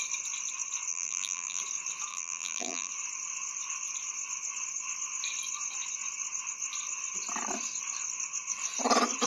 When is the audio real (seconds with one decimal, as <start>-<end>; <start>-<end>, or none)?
0.0-0.9; 1.6-2.1; 2.9-9.3